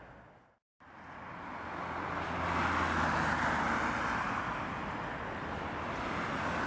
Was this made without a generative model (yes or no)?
yes